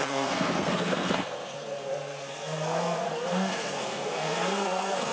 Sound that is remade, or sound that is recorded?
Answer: remade